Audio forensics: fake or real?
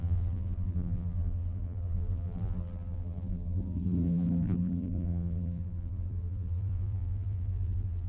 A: fake